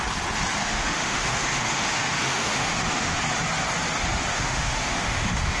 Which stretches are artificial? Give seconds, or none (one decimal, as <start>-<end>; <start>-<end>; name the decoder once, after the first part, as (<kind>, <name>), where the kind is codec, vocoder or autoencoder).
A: 0.6-3.2 (autoencoder, DAC-VAE); 4.3-5.6